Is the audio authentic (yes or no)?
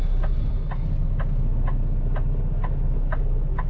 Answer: yes